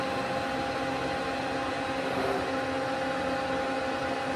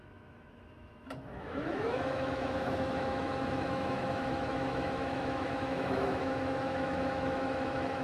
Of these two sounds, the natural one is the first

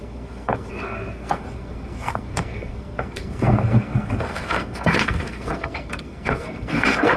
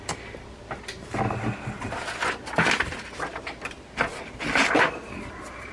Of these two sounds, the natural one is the second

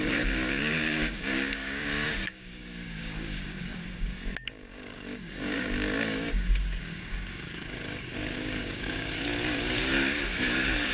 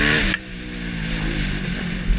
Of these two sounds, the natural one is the second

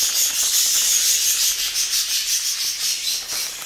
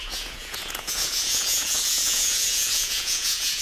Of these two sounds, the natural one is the first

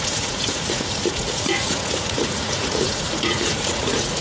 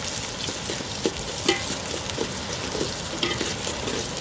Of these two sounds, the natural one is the second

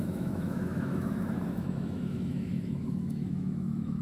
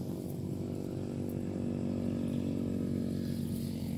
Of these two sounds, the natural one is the second